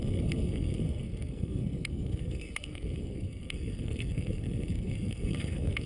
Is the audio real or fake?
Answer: fake